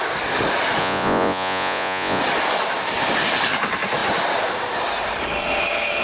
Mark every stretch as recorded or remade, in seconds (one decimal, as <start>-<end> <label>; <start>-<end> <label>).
0.0-0.8 recorded; 0.8-2.2 remade; 2.2-6.0 recorded